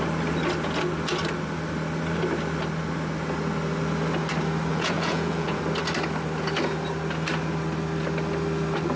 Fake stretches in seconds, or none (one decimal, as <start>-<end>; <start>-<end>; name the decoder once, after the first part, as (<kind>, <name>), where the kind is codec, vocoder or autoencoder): 4.7-5.6 (vocoder, Vocos)